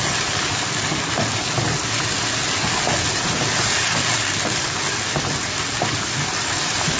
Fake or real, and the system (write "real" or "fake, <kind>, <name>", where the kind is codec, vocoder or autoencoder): real